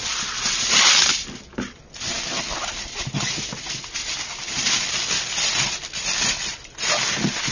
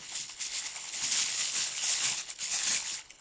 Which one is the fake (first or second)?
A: second